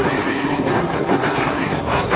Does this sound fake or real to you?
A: fake